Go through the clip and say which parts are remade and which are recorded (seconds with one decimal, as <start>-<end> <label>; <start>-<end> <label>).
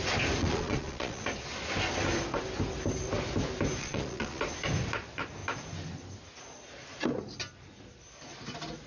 0.0-0.4 recorded; 0.4-1.2 remade; 1.2-3.8 recorded; 3.8-4.4 remade; 4.4-8.9 recorded